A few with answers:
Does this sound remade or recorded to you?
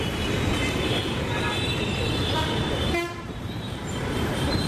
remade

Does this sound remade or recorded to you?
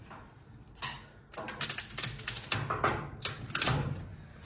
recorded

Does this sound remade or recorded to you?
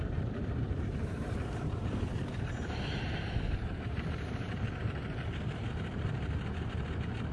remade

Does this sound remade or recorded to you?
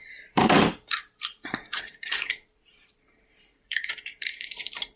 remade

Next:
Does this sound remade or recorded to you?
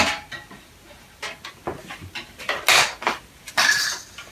recorded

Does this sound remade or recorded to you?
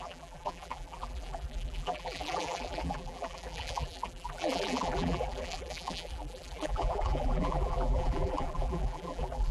remade